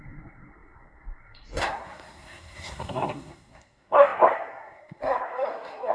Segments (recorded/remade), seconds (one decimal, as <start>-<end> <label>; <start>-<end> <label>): 0.0-5.9 remade